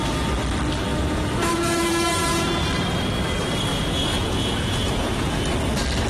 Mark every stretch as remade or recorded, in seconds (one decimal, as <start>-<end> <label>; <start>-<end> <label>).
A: 0.0-0.9 recorded; 0.9-1.9 remade; 1.9-3.7 recorded; 3.7-5.3 remade; 5.3-6.1 recorded